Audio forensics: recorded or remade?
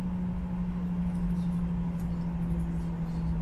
recorded